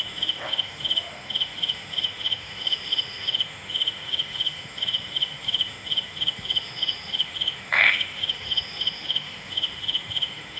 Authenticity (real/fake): fake